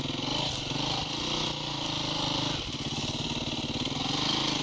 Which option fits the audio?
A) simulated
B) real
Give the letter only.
B